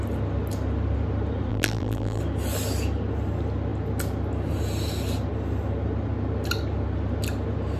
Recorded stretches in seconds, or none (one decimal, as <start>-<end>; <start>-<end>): 0.0-1.5; 2.2-7.8